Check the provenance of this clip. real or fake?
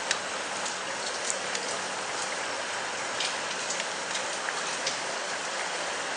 real